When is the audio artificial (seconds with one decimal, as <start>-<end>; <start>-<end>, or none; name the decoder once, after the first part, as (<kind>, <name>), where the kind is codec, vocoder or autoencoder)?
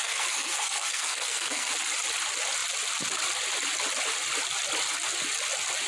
0.0-1.7 (codec, SNAC)